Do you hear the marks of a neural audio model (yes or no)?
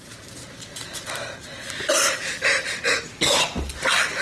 no